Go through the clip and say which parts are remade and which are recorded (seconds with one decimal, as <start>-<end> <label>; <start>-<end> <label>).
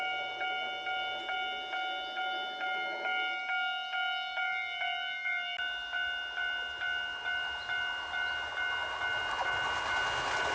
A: 0.0-10.5 recorded